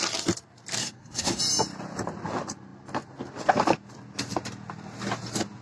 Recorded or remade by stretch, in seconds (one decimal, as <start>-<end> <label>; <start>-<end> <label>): 0.0-0.8 recorded; 0.8-1.4 remade; 1.4-5.6 recorded